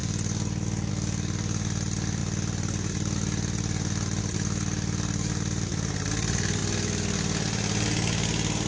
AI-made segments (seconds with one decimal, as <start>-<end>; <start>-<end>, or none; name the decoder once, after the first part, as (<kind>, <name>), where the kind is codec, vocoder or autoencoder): none